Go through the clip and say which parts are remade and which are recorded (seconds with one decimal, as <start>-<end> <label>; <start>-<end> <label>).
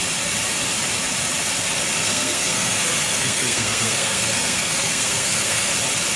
0.0-2.0 recorded; 2.0-5.7 remade; 5.7-6.2 recorded